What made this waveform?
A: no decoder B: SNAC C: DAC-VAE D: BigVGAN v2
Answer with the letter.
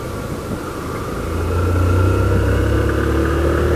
A